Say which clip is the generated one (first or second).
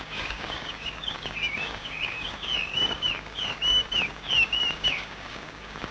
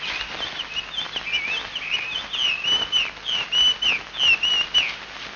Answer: first